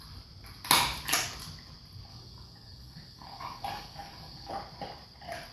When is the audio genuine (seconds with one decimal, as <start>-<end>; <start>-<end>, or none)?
0.0-2.1; 4.5-5.5